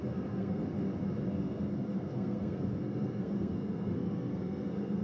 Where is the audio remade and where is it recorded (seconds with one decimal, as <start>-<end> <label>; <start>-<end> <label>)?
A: 0.0-0.6 remade; 0.6-1.3 recorded; 1.3-5.0 remade